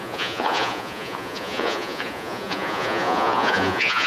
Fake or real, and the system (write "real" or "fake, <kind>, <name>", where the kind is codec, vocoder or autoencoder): fake, vocoder, Vocos